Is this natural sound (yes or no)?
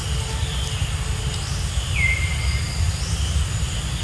yes